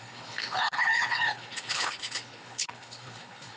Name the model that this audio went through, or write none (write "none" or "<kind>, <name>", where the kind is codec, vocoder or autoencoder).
codec, HILCodec